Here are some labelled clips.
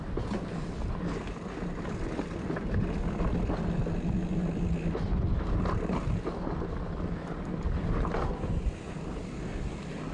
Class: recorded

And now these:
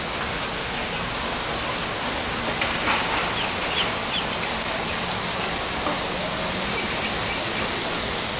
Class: recorded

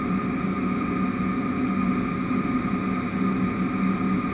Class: recorded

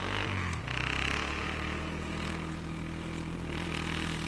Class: recorded